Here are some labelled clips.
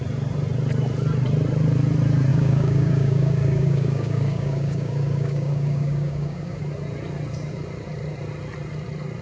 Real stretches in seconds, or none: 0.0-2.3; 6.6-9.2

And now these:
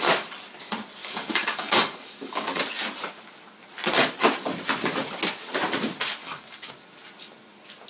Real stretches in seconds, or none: 0.0-1.0; 2.6-6.2; 6.7-7.9

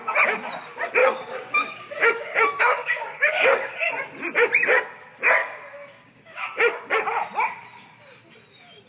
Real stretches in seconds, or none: 0.0-1.0; 3.9-5.4; 6.9-8.9

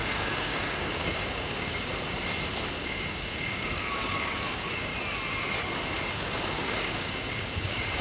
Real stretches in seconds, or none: 1.9-2.8; 4.9-6.1

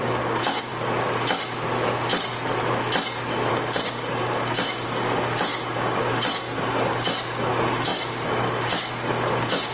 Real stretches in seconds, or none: 0.7-3.5

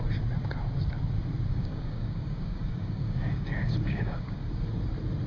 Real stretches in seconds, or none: 0.0-1.5; 4.7-5.3

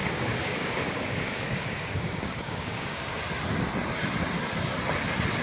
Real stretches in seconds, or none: 3.2-5.4